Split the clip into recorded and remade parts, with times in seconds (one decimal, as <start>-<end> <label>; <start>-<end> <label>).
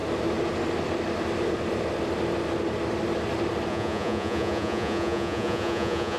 0.0-3.7 recorded; 3.7-6.2 remade